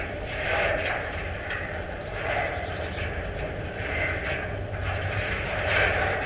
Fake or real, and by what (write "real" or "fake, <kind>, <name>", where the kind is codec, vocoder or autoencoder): fake, vocoder, BigVGAN v2